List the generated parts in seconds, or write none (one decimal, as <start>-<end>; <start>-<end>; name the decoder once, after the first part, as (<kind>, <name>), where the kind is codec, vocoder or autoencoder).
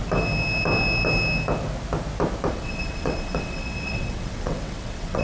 2.5-5.2 (vocoder, WaveNeXt)